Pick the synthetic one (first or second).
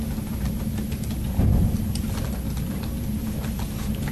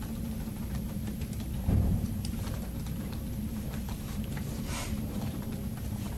second